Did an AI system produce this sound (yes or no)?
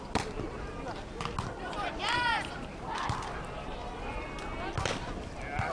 no